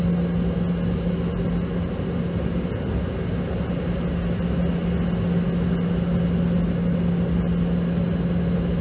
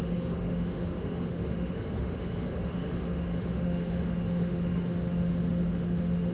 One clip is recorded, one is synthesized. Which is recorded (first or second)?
first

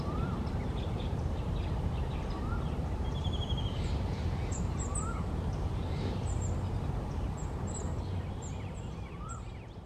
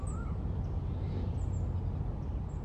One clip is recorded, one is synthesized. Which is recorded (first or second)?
second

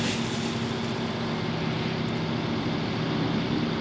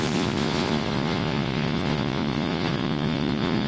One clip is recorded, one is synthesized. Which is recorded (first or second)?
first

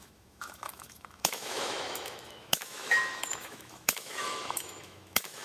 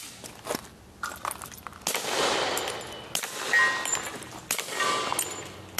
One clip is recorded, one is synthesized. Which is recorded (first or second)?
second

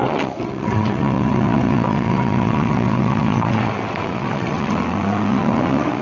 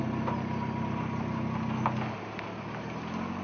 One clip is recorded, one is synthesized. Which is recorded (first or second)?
second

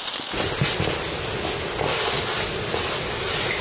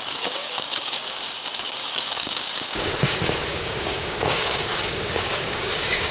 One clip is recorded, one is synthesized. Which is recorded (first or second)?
first